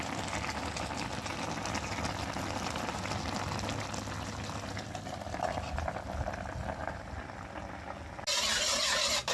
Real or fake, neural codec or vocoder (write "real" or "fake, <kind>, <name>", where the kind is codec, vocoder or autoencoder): real